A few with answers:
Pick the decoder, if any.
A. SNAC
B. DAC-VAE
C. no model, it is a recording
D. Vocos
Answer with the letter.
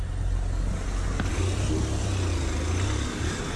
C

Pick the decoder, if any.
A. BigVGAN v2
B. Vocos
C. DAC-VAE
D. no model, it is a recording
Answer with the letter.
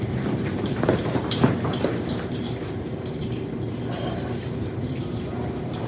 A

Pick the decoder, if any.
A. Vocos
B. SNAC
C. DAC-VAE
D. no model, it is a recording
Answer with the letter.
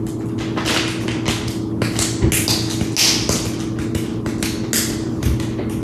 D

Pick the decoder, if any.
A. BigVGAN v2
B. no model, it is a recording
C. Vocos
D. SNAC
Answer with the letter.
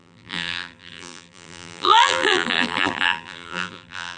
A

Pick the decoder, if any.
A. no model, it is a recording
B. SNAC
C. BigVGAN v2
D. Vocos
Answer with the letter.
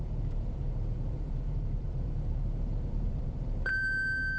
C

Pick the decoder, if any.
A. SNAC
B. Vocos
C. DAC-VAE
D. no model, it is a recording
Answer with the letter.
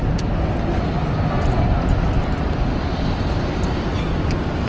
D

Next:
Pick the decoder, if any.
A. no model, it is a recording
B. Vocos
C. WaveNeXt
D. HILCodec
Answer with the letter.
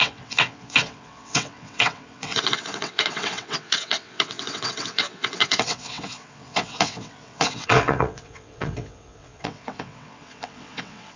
C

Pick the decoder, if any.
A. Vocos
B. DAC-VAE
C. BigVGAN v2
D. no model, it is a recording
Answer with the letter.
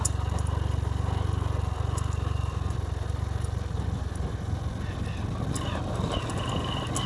D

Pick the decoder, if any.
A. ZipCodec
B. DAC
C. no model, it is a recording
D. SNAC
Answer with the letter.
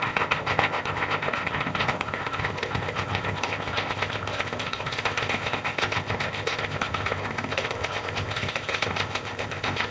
A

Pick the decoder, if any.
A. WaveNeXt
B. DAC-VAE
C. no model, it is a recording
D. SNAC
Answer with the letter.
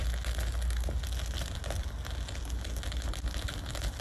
C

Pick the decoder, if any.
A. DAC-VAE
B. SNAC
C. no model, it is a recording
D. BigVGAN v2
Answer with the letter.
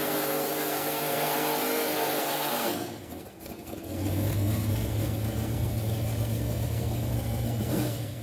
B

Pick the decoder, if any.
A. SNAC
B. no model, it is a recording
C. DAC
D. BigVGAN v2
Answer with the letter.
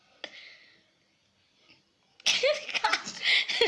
B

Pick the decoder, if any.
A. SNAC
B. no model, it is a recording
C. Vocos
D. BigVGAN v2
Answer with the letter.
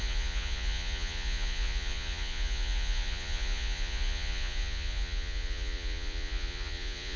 C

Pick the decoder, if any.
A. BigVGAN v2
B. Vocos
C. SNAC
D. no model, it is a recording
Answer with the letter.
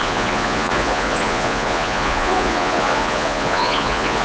B